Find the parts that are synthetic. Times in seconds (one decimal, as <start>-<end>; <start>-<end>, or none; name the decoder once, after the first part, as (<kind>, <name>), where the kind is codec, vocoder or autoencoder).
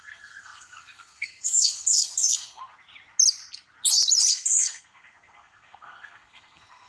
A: 0.0-2.6 (codec, SNAC); 4.3-6.9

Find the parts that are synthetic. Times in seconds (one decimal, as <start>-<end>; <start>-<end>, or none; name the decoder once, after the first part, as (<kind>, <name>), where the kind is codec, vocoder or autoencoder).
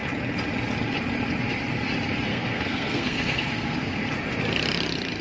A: 2.3-4.1 (codec, SNAC)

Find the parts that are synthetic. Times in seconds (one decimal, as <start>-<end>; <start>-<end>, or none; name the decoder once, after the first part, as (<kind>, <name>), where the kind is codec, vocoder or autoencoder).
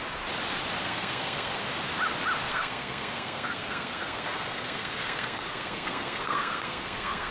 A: 0.8-1.6 (codec, SNAC); 2.5-7.3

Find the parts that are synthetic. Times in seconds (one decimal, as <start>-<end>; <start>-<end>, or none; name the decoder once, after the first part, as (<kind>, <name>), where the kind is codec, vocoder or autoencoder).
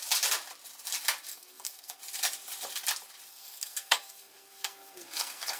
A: 1.3-2.0 (codec, SNAC); 3.3-5.6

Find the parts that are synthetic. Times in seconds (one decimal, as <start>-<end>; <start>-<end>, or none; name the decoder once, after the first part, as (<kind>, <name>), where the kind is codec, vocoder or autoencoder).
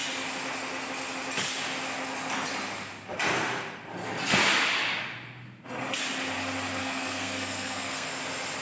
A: 6.8-8.1 (codec, SNAC)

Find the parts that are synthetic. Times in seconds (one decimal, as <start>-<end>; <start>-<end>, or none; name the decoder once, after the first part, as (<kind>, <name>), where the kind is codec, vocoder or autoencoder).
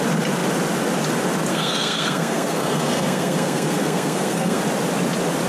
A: 1.5-4.6 (codec, SNAC)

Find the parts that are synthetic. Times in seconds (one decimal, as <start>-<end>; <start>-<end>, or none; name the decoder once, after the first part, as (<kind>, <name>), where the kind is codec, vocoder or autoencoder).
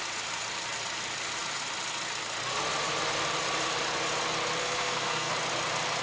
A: 4.6-5.3 (codec, SNAC)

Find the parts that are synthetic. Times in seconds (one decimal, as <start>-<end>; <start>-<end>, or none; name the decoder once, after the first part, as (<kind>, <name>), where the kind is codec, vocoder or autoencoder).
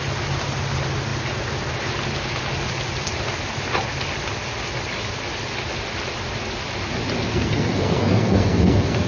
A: 7.2-9.1 (codec, SNAC)